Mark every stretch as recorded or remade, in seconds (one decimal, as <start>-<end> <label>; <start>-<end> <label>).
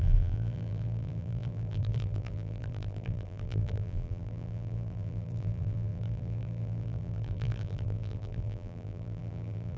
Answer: 0.0-9.8 remade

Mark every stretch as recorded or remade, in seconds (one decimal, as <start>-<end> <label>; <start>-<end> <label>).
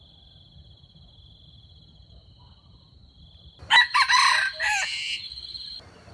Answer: 0.0-3.6 recorded; 3.6-6.1 remade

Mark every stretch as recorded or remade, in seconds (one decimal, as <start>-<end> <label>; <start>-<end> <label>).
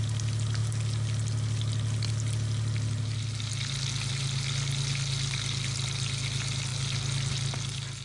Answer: 0.0-8.0 recorded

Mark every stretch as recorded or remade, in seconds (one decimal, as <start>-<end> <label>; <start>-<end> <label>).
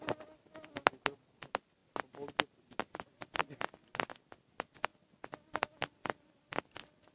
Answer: 0.0-3.4 recorded; 3.4-4.3 remade; 4.3-4.9 recorded; 4.9-6.6 remade; 6.6-7.1 recorded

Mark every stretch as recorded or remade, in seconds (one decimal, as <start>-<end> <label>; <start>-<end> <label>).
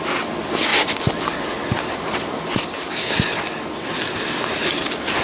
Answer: 0.0-5.2 recorded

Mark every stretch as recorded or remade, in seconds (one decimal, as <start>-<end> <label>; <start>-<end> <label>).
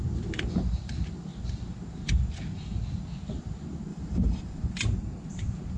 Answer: 0.0-3.9 recorded; 3.9-4.7 remade; 4.7-5.8 recorded